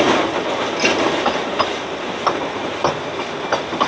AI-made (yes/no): no